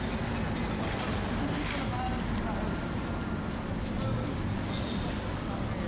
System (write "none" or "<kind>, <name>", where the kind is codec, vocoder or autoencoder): none